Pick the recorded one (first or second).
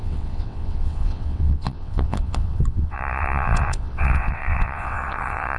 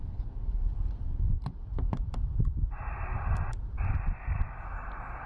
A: second